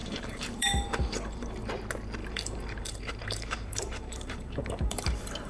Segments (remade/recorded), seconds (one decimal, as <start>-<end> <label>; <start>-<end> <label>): 0.0-1.7 remade; 1.7-2.2 recorded; 2.2-5.5 remade